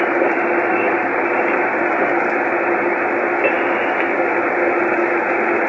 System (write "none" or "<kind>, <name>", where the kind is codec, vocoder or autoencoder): none